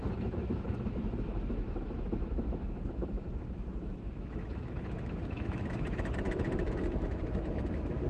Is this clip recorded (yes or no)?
no